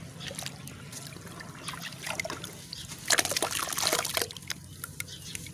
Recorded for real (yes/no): yes